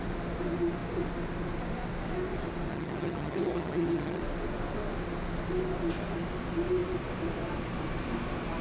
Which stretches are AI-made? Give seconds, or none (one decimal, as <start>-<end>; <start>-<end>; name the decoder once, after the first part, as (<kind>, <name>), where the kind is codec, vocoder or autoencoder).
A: 2.7-4.2 (vocoder, HiFi-GAN)